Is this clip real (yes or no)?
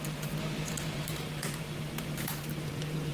no